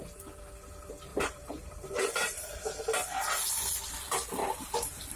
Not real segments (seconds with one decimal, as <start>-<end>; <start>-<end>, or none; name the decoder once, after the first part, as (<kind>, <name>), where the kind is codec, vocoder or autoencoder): 1.1-2.5 (vocoder, BigVGAN v2); 4.4-5.2